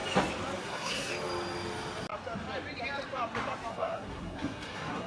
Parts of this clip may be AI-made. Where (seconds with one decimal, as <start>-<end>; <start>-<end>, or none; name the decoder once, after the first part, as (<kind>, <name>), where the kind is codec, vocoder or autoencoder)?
0.6-1.1 (codec, SNAC); 3.7-5.1